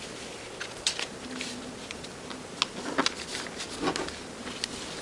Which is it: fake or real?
real